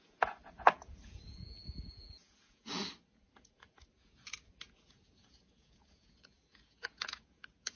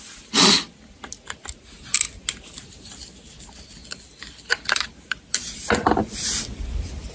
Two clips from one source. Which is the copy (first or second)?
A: first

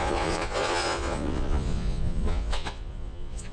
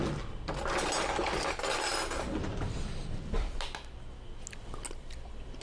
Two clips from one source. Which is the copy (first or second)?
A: first